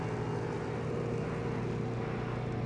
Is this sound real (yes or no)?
yes